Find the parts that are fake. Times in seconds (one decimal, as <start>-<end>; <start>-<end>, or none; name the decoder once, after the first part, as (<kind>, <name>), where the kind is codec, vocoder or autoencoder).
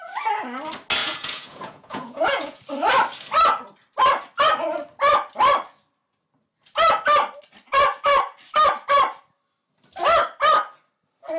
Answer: 1.0-2.6 (vocoder, Vocos)